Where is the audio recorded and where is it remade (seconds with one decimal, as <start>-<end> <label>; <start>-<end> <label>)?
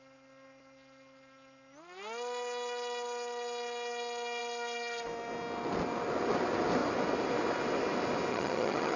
0.0-8.3 recorded; 8.3-9.0 remade